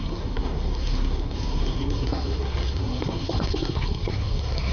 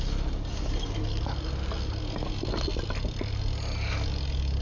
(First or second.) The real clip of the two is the second